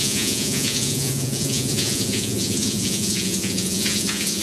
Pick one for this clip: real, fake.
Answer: fake